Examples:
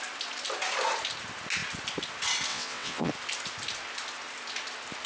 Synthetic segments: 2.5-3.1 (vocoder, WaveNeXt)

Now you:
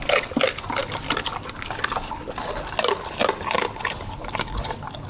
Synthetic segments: none